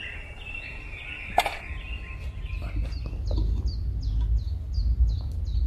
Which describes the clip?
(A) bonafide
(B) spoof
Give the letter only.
A